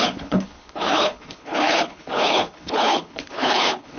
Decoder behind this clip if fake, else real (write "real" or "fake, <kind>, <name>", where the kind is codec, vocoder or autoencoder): fake, codec, HILCodec